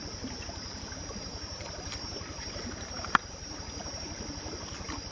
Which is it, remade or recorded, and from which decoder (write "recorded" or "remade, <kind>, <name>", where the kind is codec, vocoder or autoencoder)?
recorded